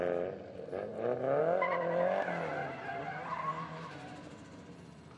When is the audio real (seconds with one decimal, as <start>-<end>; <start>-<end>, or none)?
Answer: 0.0-2.5; 3.0-5.2